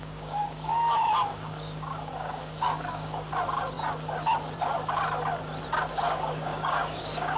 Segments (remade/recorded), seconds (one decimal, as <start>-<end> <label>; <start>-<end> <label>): 0.0-3.3 remade; 3.3-5.9 recorded; 5.9-7.4 remade